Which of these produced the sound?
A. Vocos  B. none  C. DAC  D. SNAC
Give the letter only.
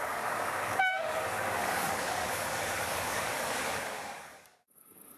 C